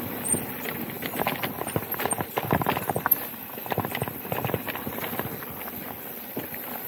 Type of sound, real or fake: real